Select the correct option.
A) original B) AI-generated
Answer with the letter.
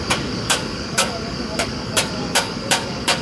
B